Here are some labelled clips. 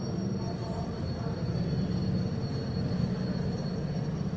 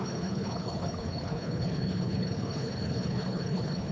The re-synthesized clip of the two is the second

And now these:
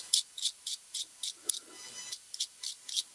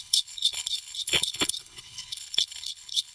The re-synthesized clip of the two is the second